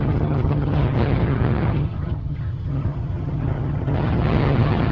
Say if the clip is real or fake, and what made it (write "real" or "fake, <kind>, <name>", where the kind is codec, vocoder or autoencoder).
fake, vocoder, HiFi-GAN